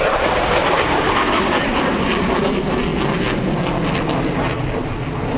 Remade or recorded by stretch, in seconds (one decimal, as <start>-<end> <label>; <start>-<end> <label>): 0.0-5.4 recorded